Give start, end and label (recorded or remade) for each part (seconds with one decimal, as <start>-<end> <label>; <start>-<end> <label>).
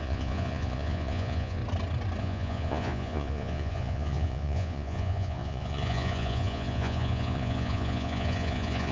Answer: 0.0-1.6 remade; 1.6-2.2 recorded; 2.2-8.9 remade